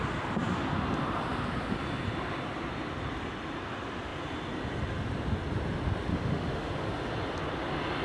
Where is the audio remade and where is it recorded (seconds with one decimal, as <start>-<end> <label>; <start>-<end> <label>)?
0.0-6.1 recorded; 6.1-6.7 remade; 6.7-8.0 recorded